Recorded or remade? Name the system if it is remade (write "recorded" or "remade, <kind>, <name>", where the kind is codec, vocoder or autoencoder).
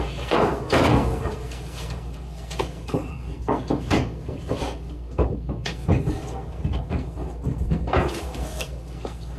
remade, codec, SNAC